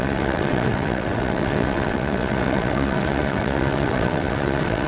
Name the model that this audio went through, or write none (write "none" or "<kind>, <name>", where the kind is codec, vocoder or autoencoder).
vocoder, WaveNeXt